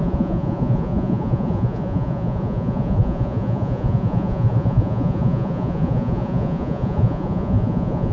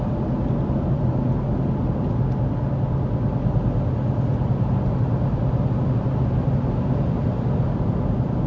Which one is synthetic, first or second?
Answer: first